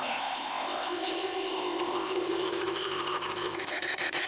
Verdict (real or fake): fake